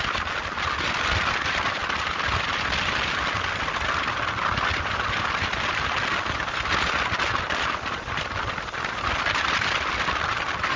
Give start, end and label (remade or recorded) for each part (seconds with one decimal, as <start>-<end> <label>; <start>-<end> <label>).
0.0-10.8 recorded